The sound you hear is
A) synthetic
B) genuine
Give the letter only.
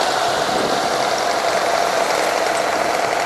B